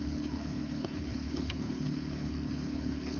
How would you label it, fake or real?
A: fake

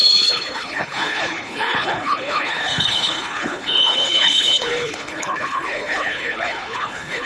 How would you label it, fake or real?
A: fake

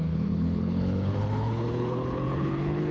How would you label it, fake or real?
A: fake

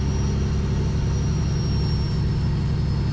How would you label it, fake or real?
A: real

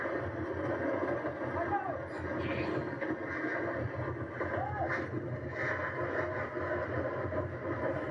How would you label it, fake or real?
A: real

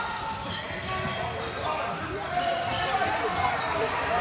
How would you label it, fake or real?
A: real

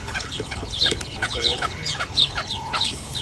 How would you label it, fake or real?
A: fake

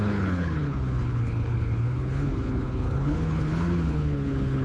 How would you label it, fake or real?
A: fake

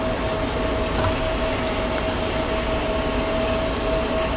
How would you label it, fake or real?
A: real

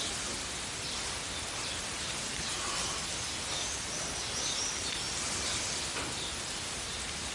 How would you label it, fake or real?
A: real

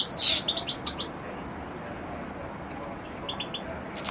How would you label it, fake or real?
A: real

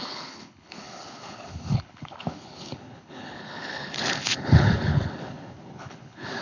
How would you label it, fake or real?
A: fake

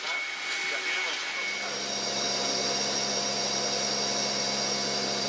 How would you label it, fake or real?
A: real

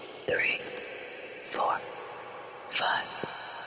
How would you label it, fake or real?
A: real